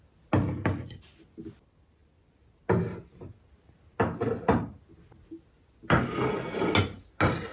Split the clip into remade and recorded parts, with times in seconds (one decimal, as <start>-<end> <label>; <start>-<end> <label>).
0.0-7.5 recorded